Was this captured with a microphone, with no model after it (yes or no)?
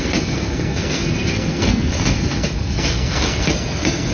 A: no